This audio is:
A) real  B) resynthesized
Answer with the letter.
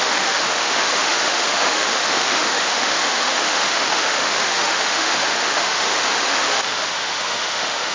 B